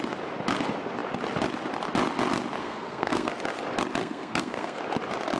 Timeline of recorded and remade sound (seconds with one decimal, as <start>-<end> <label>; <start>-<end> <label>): 0.0-2.6 recorded; 2.6-3.3 remade; 3.3-4.0 recorded; 4.0-4.8 remade; 4.8-5.4 recorded